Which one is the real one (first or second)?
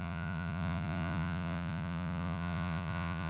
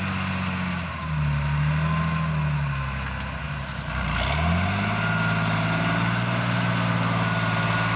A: second